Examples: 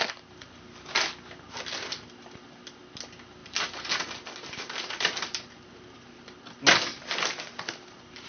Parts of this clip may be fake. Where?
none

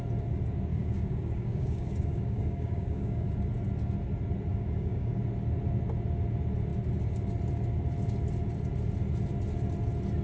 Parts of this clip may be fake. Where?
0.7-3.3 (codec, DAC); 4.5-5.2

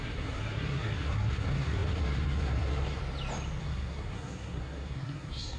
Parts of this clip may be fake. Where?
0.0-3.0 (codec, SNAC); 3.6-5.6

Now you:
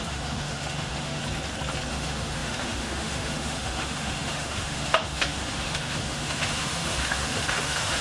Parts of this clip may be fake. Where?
0.0-1.2 (autoencoder, DAC-VAE); 1.9-8.0